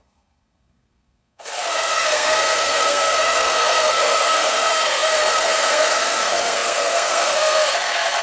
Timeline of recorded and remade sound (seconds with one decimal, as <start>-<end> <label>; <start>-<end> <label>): 0.0-8.2 remade